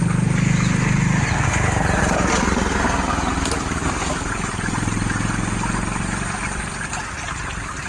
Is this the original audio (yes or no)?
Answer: yes